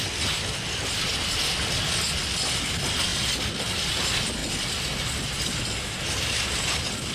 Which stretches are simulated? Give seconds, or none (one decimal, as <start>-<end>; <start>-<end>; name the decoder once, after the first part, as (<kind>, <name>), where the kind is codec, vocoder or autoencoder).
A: none